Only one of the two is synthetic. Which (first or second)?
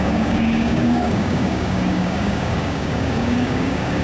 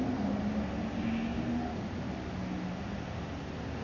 first